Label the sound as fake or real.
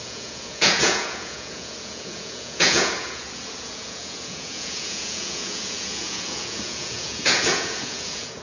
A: fake